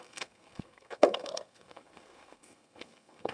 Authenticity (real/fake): fake